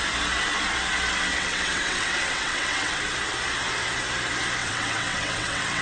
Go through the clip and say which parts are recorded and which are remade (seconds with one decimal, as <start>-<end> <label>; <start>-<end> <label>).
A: 0.0-1.3 recorded; 1.3-3.0 remade; 3.0-4.6 recorded; 4.6-5.8 remade